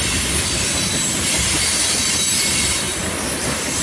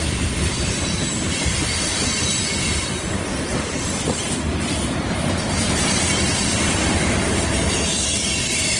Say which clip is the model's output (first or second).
second